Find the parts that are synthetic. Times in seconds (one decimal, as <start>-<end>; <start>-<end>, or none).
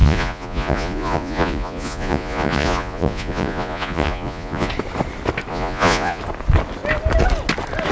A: 0.0-4.7; 5.5-6.2